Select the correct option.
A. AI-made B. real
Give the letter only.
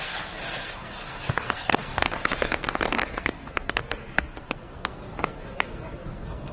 A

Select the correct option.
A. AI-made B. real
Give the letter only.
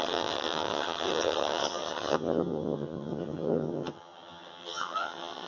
A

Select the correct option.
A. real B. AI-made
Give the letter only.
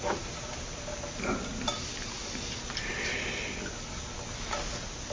A